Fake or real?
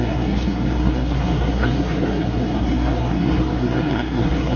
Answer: fake